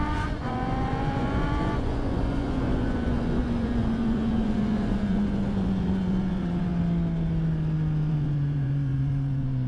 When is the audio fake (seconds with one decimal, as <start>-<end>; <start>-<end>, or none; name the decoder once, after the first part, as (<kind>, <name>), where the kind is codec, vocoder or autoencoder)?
0.0-6.7 (vocoder, Vocos); 8.1-9.7